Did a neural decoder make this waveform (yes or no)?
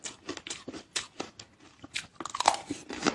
no